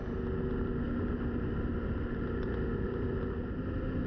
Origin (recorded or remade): recorded